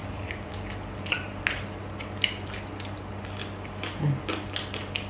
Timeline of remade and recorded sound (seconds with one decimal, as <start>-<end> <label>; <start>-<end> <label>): 0.0-5.1 recorded